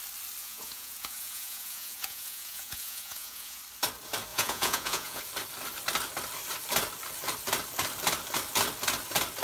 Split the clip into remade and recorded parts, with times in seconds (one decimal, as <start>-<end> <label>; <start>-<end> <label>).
0.0-0.4 recorded; 0.4-3.6 remade; 3.6-4.3 recorded; 4.3-5.2 remade; 5.2-9.4 recorded